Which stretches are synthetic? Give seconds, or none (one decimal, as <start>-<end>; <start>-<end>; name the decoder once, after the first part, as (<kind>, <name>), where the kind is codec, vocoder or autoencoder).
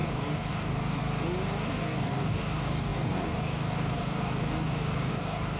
0.0-1.0 (codec, DAC); 1.7-5.6